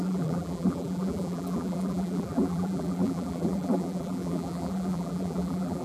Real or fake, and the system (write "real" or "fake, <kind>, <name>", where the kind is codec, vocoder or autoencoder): fake, vocoder, BigVGAN v2